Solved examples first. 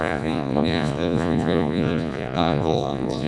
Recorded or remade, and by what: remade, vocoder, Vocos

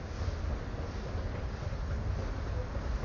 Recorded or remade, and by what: recorded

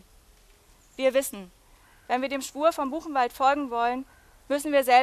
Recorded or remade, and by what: recorded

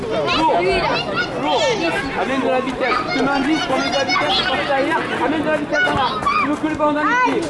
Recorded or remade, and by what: recorded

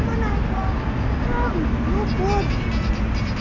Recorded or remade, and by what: recorded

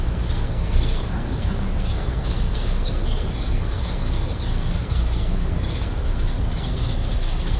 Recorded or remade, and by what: remade, codec, SNAC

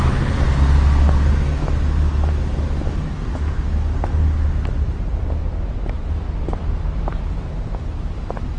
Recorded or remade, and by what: recorded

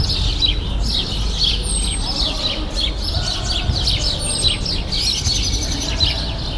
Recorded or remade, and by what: recorded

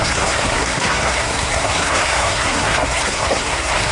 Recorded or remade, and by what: remade, codec, SNAC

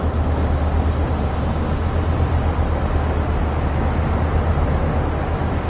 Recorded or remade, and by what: recorded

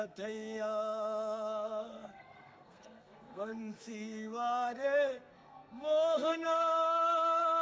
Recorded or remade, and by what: remade, codec, SNAC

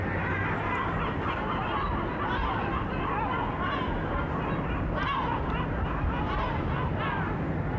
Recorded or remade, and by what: recorded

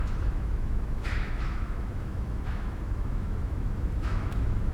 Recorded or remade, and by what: remade, autoencoder, DAC-VAE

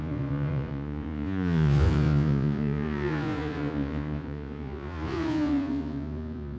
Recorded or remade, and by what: remade, vocoder, Vocos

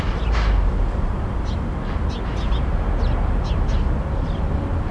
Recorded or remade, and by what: recorded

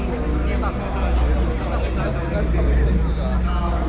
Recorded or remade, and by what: recorded